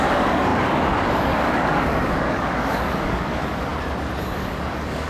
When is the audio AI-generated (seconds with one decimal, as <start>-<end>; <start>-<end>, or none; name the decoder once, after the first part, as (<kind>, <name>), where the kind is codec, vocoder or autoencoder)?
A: 0.0-3.7 (codec, DAC); 4.2-5.1